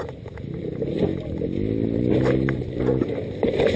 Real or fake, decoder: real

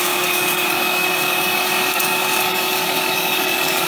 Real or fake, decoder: fake, codec, DAC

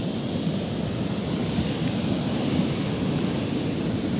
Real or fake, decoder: real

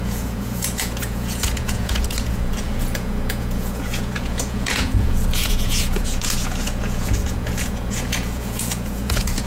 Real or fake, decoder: fake, vocoder, Vocos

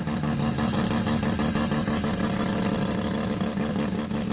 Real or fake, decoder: real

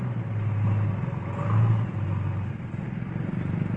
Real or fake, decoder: real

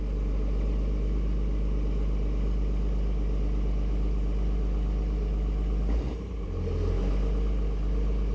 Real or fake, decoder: real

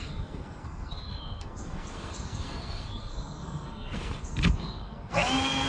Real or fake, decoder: fake, codec, SNAC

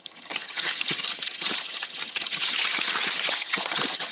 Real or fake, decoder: fake, vocoder, HiFi-GAN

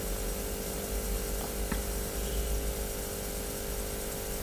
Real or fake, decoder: real